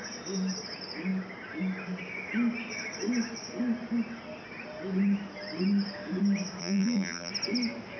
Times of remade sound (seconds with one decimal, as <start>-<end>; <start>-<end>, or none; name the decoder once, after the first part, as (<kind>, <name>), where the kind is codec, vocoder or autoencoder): 6.6-7.3 (vocoder, BigVGAN v2)